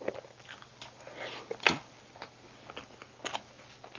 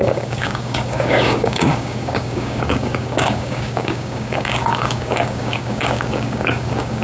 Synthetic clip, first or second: second